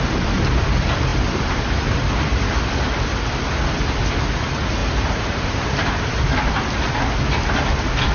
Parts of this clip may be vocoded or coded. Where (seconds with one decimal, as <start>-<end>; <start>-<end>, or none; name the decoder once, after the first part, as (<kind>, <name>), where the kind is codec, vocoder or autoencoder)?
4.8-6.5 (vocoder, BigVGAN v2)